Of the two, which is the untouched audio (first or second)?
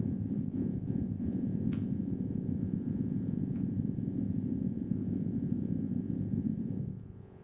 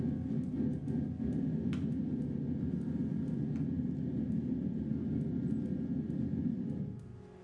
second